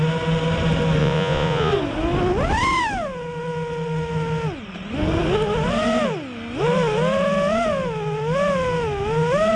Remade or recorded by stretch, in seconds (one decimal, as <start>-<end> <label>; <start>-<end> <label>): 0.0-1.0 recorded; 1.0-1.7 remade; 1.7-9.6 recorded